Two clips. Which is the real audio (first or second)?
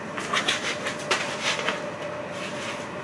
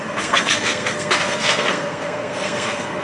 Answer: first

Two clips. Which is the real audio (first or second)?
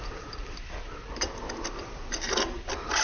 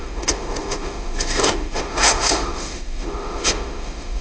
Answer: first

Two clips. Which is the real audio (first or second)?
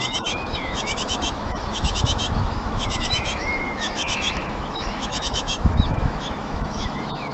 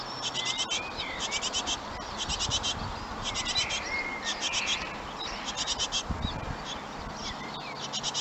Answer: second